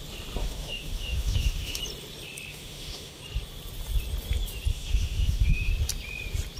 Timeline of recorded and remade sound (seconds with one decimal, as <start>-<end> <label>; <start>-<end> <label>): 0.0-0.4 recorded; 0.4-1.8 remade; 1.8-2.5 recorded; 2.5-3.2 remade; 3.2-4.7 recorded; 4.7-5.7 remade; 5.7-6.6 recorded